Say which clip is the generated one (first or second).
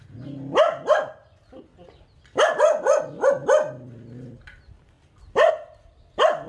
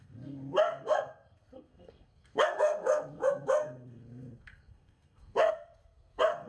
second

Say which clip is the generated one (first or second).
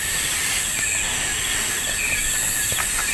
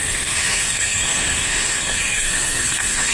second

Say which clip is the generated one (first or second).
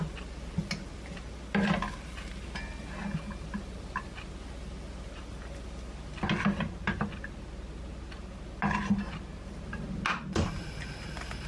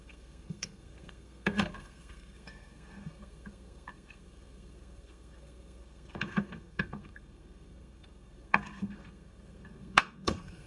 second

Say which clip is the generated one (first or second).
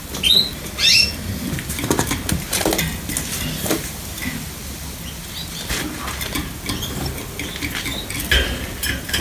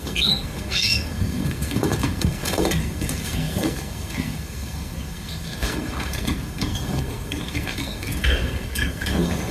second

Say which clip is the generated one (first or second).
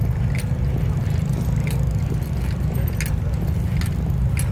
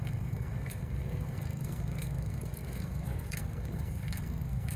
second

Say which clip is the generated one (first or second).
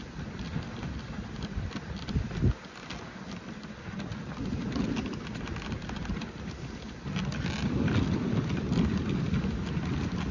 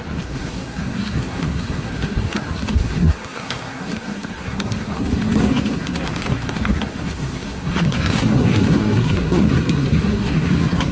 second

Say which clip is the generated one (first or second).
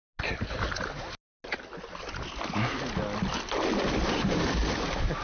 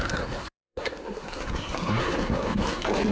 second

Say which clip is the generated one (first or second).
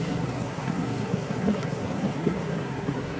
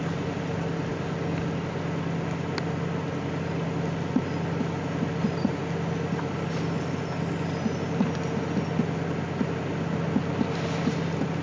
first